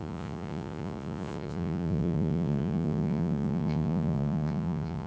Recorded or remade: remade